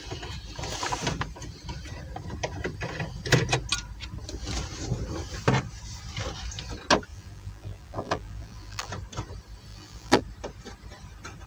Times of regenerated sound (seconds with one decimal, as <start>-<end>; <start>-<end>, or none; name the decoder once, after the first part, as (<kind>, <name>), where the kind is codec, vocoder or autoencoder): 7.1-8.9 (vocoder, BigVGAN v2); 9.7-10.2